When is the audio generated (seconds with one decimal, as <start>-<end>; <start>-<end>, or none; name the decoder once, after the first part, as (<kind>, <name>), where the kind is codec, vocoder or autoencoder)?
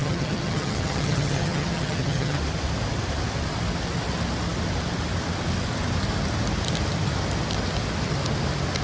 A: 0.0-2.4 (vocoder, HiFi-GAN)